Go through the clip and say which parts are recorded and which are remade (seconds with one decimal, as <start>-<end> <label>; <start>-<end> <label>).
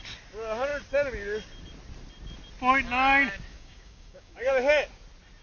0.0-3.5 recorded; 3.5-4.5 remade; 4.5-5.4 recorded